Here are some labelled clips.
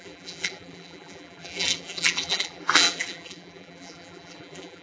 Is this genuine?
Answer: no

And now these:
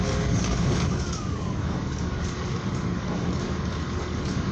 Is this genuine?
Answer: no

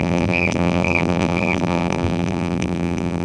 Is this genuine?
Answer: no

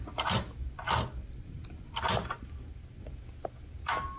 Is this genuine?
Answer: yes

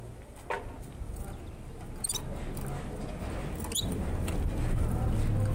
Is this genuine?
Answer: yes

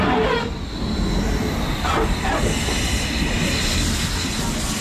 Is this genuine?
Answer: yes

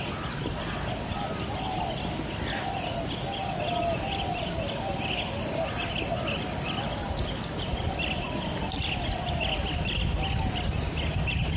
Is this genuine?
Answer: yes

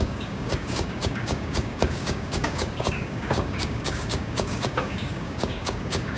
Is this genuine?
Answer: no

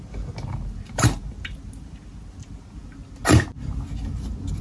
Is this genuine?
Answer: yes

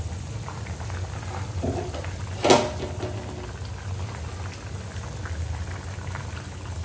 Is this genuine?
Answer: yes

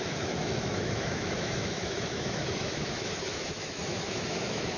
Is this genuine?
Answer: no